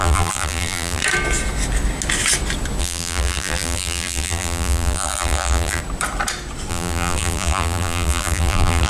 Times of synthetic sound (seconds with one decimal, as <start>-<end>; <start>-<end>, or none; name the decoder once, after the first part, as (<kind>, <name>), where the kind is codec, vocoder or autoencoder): 0.0-1.0 (vocoder, BigVGAN v2); 2.8-5.8; 6.7-8.9